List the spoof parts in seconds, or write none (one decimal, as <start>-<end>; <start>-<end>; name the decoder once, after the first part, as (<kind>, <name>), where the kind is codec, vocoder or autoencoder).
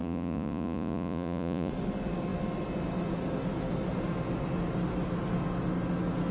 0.0-1.7 (vocoder, Vocos)